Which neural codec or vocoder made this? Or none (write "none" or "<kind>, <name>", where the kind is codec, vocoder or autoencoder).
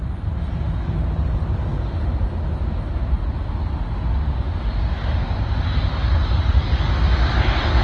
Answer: none